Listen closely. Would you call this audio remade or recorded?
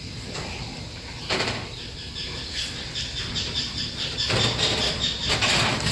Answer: recorded